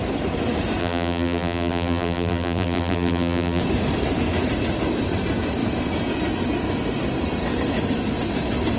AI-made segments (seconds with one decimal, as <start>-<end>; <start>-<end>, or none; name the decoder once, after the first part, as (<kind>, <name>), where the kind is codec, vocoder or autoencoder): 0.8-3.6 (vocoder, BigVGAN v2)